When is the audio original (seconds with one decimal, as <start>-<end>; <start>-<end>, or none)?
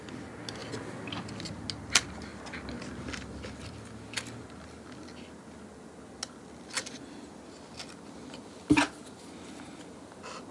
0.0-10.5